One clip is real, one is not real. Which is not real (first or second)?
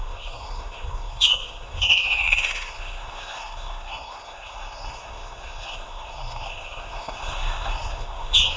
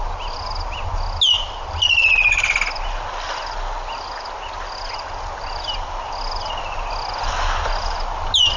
first